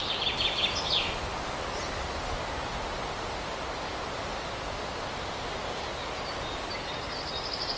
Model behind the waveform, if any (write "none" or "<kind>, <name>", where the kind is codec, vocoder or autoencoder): none